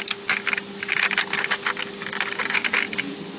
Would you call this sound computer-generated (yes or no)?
no